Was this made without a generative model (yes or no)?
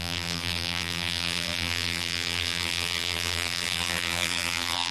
no